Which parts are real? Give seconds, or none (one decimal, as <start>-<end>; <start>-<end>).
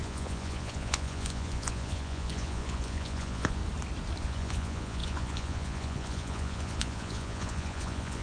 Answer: 3.6-4.2